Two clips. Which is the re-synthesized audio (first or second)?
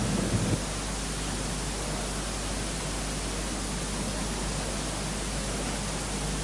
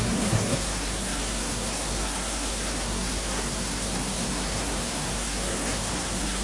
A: second